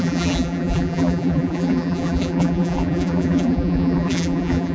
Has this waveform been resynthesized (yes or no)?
yes